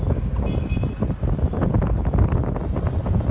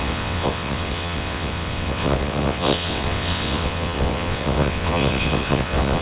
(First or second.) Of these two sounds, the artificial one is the second